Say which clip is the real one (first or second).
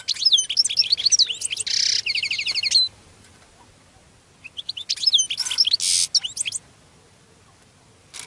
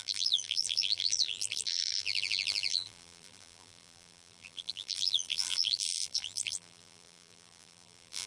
first